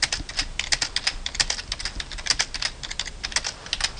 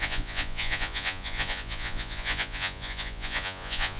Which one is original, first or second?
first